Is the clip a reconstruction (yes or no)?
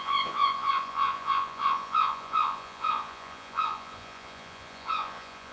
yes